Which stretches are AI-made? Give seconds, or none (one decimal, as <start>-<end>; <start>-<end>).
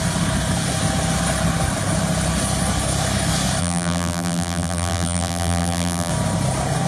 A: 3.6-6.1